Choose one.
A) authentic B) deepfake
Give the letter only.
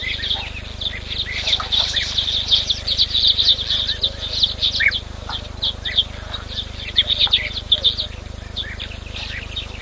A